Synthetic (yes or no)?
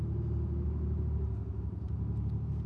no